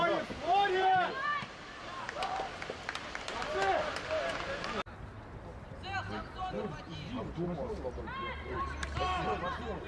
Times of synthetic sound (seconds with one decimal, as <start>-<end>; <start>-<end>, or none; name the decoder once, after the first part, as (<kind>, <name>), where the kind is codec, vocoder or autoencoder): 0.0-1.3 (vocoder, BigVGAN v2); 5.6-9.9